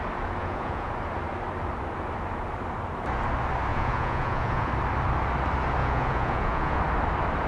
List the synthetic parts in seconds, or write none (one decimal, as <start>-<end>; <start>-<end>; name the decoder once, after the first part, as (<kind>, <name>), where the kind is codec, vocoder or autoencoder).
0.4-0.9 (vocoder, Vocos); 3.7-4.7; 5.8-6.8